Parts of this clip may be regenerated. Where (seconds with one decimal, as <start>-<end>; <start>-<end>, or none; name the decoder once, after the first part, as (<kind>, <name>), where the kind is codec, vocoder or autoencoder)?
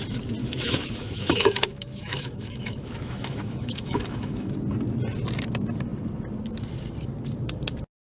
0.4-4.5 (autoencoder, DAC-VAE)